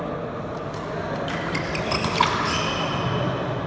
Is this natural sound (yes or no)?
yes